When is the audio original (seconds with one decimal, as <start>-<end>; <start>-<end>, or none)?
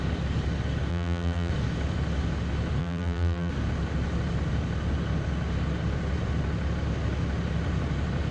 0.0-0.9; 1.5-2.8; 3.5-8.3